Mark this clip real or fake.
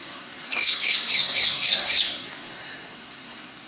fake